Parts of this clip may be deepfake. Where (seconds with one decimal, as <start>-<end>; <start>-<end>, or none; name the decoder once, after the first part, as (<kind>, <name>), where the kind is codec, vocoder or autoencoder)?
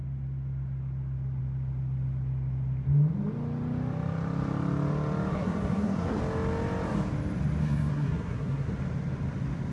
5.3-6.2 (codec, SNAC); 7.6-8.7